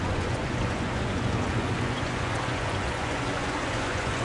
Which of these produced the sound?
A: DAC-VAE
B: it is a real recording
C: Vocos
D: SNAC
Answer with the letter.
C